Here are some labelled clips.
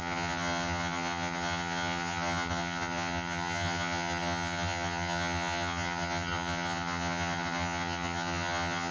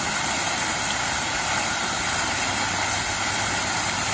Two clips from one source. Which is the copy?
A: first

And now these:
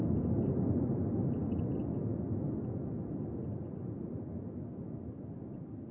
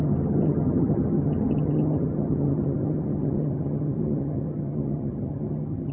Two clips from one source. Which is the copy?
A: second